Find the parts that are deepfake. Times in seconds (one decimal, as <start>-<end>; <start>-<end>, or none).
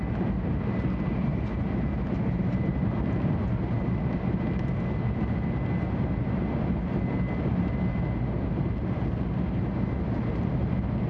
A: none